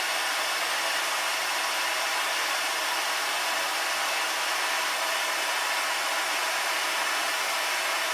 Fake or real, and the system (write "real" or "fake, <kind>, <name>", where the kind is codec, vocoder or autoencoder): real